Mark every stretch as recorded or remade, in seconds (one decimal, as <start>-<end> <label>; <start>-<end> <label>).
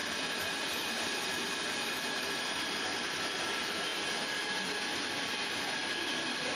0.0-6.6 recorded